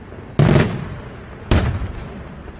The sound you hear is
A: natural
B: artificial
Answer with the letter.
B